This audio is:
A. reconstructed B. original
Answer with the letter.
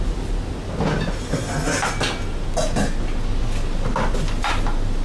B